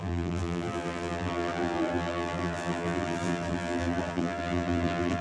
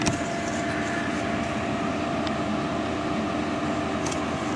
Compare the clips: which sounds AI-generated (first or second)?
first